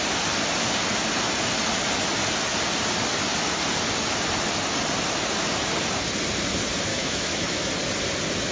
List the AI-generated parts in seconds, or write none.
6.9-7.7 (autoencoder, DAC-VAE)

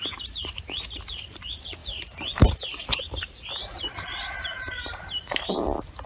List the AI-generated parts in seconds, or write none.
0.0-6.1 (vocoder, BigVGAN v2)